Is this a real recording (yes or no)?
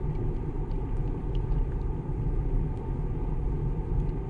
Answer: yes